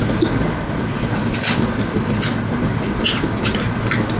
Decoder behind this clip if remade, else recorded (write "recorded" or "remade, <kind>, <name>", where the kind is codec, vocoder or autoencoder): recorded